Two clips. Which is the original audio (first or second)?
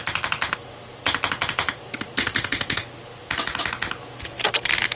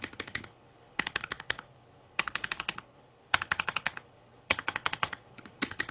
first